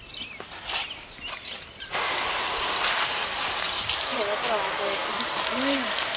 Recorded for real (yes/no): yes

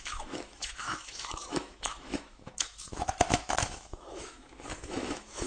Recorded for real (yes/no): no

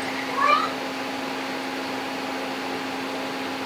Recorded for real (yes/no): yes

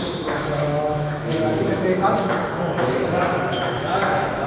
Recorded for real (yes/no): no